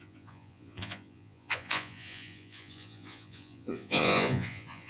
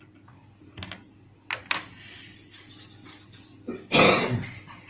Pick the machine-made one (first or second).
first